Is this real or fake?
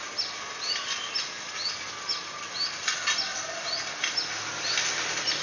real